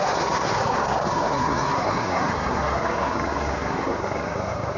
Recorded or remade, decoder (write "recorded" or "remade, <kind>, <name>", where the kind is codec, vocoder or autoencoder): remade, codec, SNAC